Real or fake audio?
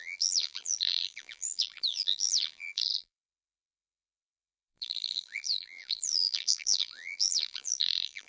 fake